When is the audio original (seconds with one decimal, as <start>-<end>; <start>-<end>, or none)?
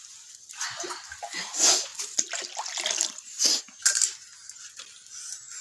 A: 0.0-5.6